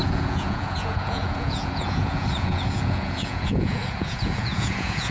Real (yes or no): no